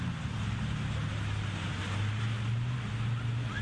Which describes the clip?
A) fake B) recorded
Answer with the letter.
B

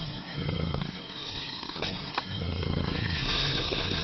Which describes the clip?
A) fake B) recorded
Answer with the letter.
A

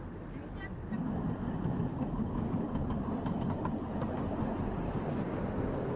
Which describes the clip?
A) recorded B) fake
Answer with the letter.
A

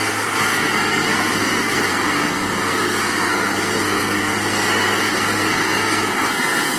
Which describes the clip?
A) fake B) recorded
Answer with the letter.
A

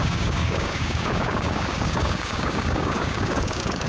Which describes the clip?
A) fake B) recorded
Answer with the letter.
A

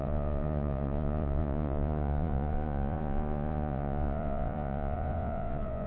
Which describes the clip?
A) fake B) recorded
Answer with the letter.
A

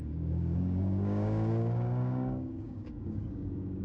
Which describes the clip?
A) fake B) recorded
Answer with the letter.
A